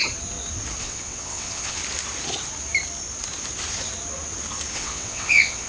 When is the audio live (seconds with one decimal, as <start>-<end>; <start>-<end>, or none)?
0.0-0.8; 1.8-4.7